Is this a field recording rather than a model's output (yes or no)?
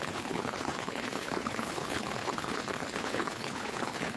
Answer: no